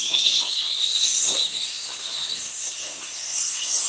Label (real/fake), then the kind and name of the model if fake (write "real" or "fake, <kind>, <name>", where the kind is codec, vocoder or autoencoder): fake, codec, SNAC